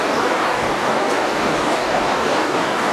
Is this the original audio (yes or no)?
no